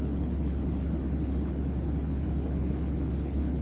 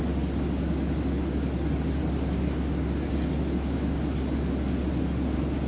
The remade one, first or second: first